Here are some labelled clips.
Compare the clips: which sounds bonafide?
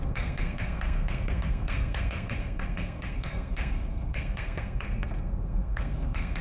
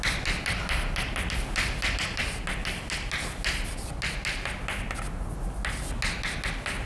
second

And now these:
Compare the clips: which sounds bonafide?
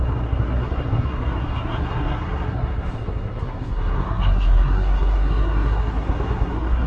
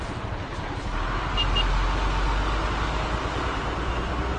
second